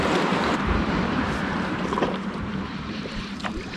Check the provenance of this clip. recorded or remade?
remade